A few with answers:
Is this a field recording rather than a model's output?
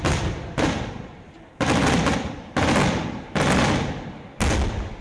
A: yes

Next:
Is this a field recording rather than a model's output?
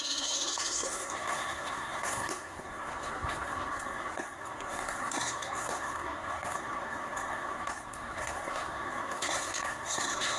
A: no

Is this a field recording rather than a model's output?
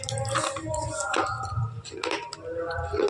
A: yes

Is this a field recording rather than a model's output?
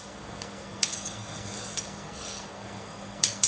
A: no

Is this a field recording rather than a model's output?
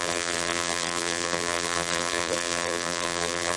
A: no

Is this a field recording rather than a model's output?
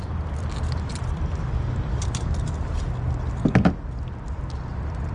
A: yes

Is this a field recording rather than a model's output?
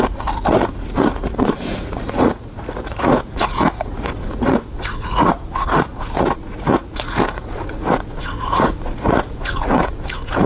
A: no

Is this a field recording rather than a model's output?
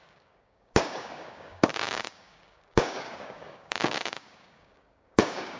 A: no